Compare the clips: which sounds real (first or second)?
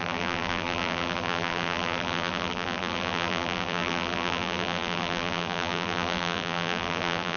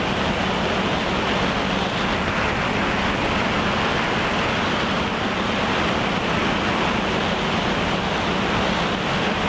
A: second